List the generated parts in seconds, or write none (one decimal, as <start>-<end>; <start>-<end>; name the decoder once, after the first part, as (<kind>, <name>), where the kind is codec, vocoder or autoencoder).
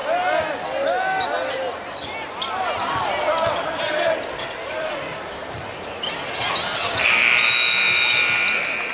2.8-8.9 (vocoder, BigVGAN v2)